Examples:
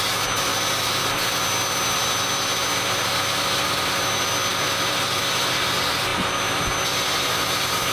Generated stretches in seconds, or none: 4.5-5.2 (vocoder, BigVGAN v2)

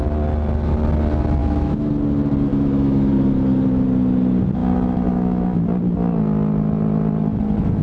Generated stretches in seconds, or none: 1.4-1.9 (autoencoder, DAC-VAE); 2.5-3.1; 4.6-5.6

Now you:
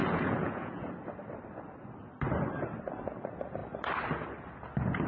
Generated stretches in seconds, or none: 0.0-0.9 (vocoder, Vocos)

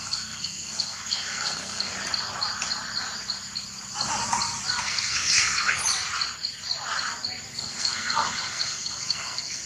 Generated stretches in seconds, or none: 0.0-1.9 (codec, SNAC); 4.8-5.8; 7.5-9.7

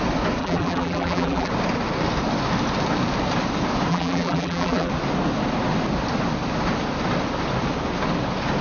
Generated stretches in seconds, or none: 0.4-1.5 (vocoder, BigVGAN v2); 3.9-4.9

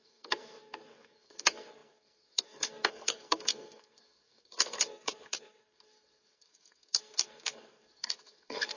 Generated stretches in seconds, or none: 0.0-8.8 (codec, SNAC)